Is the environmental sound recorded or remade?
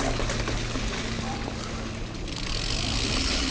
recorded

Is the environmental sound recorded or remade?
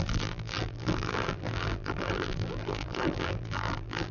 remade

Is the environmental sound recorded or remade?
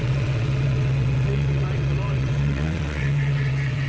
remade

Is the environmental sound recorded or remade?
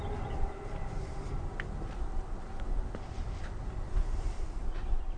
recorded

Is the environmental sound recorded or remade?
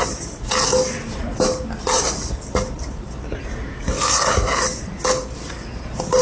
recorded